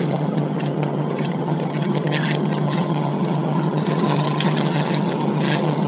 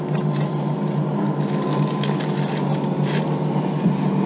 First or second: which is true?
second